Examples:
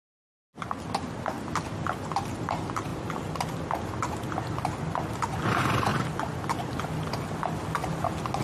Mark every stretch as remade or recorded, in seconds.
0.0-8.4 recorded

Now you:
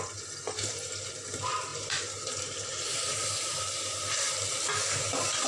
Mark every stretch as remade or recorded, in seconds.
0.0-1.7 recorded; 1.7-3.6 remade; 3.6-5.5 recorded

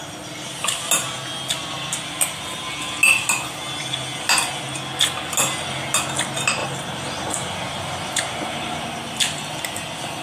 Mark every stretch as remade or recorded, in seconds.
0.0-6.6 recorded; 6.6-8.8 remade; 8.8-10.2 recorded

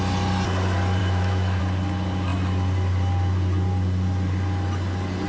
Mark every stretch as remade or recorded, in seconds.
0.0-1.0 recorded; 1.0-1.6 remade; 1.6-5.3 recorded

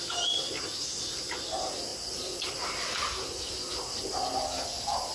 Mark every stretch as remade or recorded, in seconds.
0.0-5.1 recorded

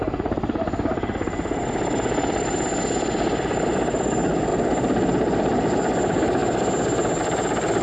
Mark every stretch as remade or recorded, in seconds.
0.0-7.8 recorded

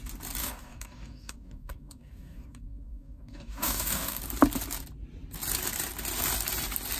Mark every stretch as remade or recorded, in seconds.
0.0-0.4 recorded; 0.4-4.2 remade; 4.2-7.0 recorded

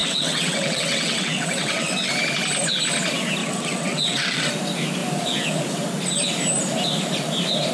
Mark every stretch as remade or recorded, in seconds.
0.0-2.1 remade; 2.1-3.4 recorded; 3.4-4.5 remade; 4.5-7.7 recorded